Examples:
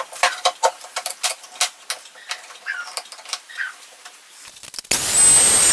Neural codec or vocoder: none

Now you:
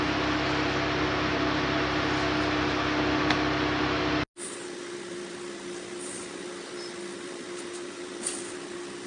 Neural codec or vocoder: none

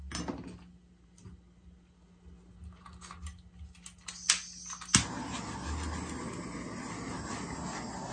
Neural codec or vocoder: none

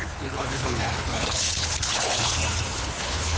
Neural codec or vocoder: codec, HILCodec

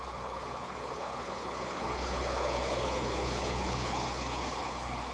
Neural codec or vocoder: codec, HILCodec